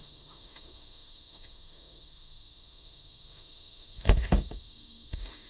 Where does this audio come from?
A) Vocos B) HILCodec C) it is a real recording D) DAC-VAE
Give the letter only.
D